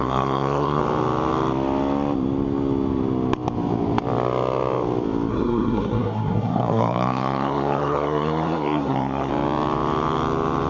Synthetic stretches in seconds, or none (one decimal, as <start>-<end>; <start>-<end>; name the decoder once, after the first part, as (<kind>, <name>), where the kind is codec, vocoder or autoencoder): 0.0-0.8 (codec, SNAC); 5.3-9.3